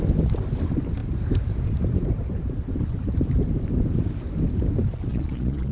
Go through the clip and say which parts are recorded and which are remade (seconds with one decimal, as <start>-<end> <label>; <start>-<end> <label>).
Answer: 0.0-5.1 recorded; 5.1-5.7 remade